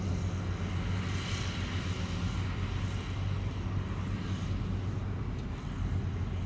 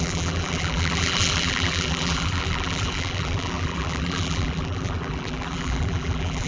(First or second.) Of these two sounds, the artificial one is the second